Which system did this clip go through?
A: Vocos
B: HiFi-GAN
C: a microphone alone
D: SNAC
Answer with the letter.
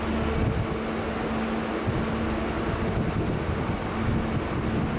C